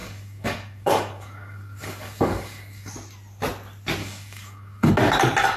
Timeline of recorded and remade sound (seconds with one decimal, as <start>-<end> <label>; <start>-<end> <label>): 0.0-2.9 remade; 2.9-4.0 recorded; 4.0-4.9 remade; 4.9-5.6 recorded